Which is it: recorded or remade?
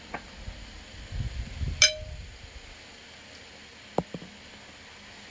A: recorded